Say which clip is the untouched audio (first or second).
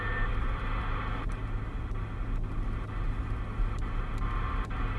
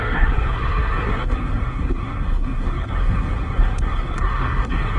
first